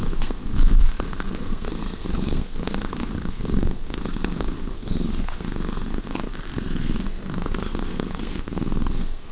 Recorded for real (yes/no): no